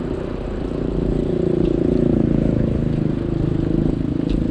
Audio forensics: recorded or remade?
remade